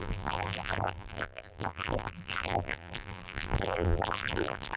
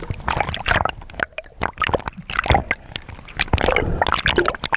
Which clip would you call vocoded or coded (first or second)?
first